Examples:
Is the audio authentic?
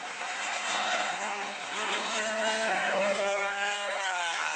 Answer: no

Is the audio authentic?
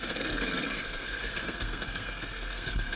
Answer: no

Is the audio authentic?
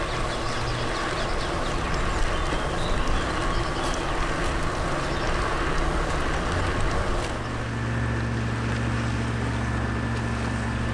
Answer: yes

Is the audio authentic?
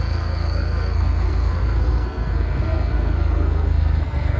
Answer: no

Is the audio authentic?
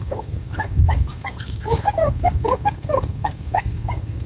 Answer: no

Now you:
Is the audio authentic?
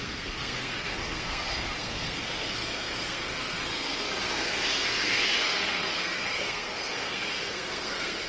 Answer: no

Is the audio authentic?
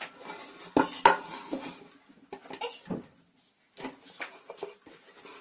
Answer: yes